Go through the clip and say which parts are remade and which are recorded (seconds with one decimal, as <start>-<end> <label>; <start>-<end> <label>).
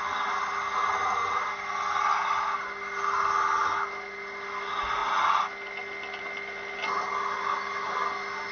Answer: 0.0-8.5 recorded